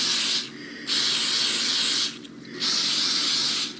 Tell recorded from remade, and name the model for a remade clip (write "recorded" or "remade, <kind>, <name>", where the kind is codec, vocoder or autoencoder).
recorded